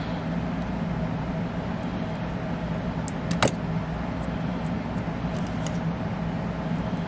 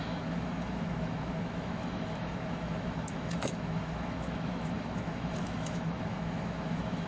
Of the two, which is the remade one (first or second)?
second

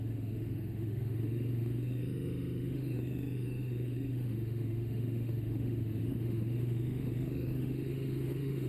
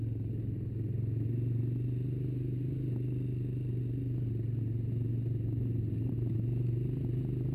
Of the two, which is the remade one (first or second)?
first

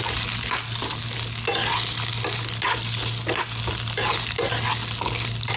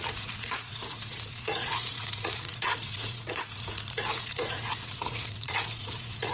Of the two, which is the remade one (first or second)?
second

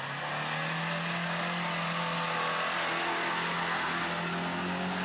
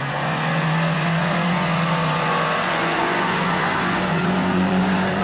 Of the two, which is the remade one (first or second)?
second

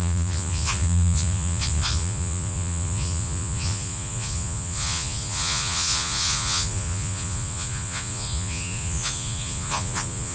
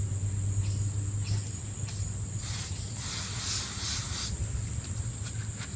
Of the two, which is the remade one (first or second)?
first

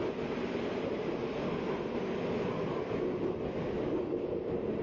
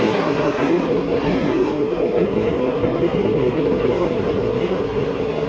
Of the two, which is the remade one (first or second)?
second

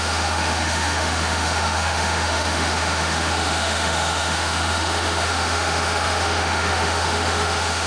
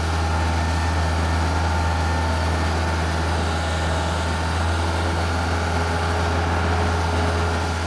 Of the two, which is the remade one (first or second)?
first